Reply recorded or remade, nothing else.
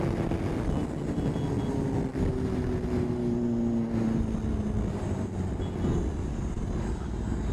recorded